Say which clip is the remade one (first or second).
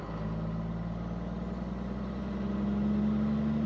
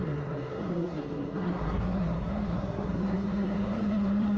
second